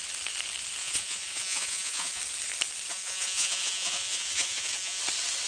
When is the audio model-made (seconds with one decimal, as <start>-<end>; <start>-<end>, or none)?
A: 0.8-2.2; 2.9-5.0